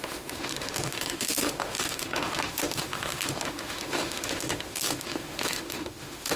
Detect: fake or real fake